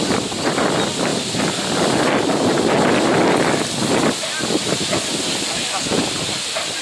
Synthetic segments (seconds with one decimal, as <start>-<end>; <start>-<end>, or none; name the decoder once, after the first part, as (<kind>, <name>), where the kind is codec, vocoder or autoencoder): none